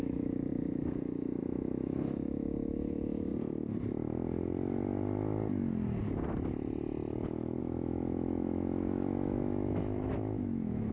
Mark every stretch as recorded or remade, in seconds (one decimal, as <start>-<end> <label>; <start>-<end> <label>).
0.0-3.3 remade; 3.3-7.6 recorded; 7.6-10.9 remade